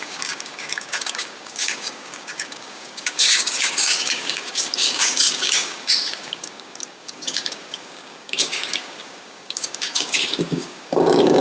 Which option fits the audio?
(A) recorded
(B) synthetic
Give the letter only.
B